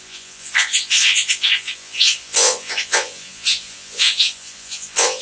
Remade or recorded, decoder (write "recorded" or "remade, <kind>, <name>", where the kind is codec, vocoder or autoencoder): remade, vocoder, Vocos